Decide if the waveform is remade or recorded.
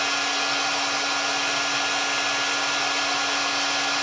recorded